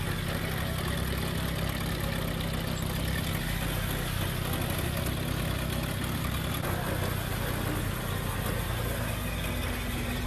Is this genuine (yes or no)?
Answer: yes